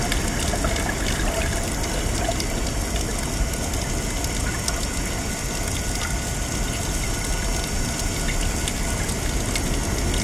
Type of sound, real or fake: real